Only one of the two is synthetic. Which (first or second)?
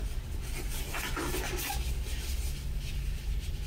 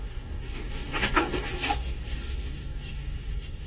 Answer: second